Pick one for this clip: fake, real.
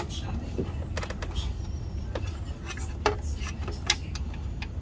real